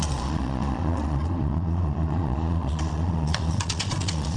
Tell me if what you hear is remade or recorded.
remade